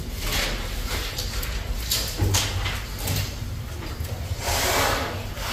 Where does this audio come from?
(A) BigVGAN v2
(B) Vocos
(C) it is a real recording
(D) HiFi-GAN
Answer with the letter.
C